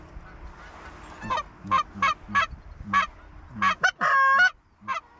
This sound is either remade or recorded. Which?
recorded